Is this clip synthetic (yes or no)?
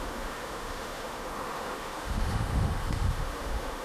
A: yes